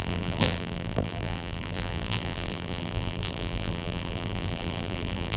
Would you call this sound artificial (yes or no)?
yes